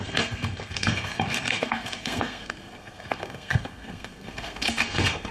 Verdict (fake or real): fake